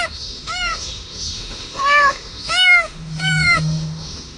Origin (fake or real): fake